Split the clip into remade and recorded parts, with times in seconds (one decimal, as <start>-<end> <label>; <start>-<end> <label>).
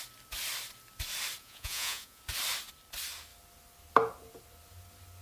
0.0-1.4 recorded; 1.4-2.2 remade; 2.2-5.2 recorded